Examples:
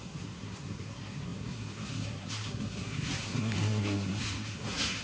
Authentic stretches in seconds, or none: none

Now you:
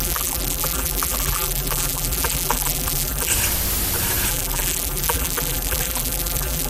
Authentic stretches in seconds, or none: 3.3-4.3

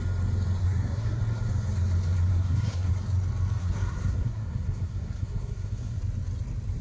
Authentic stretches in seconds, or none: 0.0-0.6; 1.2-2.3; 2.9-3.6; 6.0-6.8

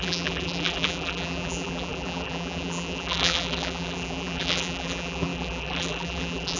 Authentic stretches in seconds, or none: none